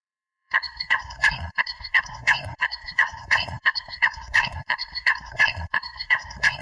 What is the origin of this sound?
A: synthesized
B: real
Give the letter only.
A